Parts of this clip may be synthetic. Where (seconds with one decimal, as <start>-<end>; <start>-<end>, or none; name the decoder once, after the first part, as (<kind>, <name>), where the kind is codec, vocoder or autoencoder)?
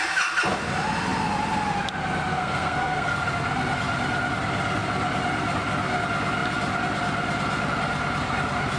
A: 2.3-3.1 (codec, SNAC)